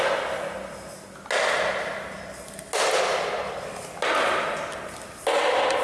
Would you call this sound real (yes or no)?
yes